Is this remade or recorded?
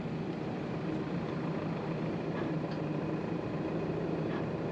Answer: remade